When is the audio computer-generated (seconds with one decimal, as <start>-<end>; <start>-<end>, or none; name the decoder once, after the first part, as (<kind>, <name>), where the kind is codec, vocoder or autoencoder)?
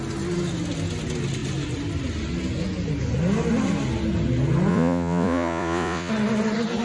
4.7-6.1 (vocoder, Vocos)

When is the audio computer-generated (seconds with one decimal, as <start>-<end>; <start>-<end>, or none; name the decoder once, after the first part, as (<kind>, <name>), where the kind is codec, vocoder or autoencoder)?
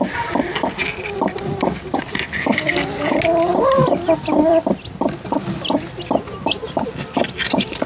none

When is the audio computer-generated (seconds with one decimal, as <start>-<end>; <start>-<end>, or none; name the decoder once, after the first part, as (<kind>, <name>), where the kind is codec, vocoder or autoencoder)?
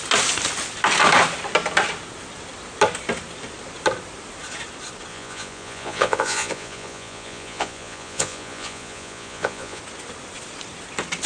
5.1-9.8 (vocoder, Vocos)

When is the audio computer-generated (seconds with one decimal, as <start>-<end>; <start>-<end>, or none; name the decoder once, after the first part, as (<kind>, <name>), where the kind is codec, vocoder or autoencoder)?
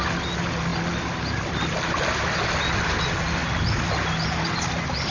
none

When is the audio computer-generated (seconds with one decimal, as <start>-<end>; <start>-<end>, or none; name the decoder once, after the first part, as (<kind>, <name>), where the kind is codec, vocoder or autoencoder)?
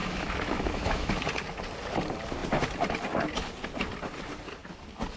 0.0-1.1 (autoencoder, DAC-VAE)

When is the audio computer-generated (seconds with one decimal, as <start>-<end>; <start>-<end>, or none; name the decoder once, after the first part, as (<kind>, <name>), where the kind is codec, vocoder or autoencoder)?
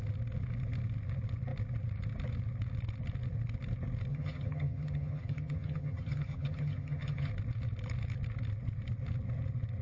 4.1-7.3 (vocoder, HiFi-GAN)